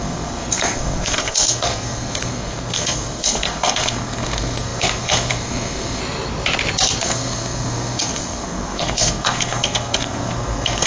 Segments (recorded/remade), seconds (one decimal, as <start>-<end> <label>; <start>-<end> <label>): 0.0-6.0 remade; 6.0-7.0 recorded; 7.0-10.9 remade